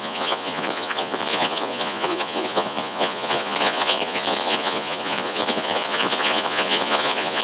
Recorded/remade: remade